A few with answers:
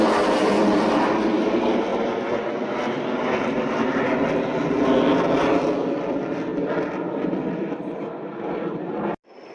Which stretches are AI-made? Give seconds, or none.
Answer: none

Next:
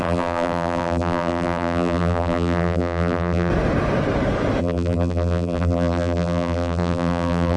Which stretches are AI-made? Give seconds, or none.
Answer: 0.0-3.5; 4.6-7.6

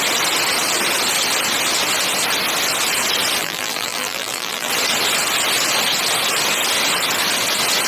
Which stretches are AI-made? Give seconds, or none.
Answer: 3.4-4.7